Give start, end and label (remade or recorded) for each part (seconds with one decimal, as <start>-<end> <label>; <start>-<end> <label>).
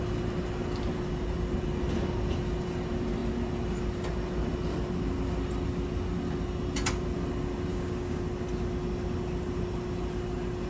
0.0-7.7 recorded; 7.7-8.2 remade; 8.2-10.7 recorded